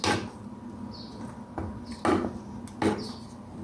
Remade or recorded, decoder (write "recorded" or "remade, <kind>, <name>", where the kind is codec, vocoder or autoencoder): recorded